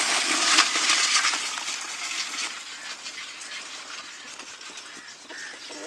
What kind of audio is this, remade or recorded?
recorded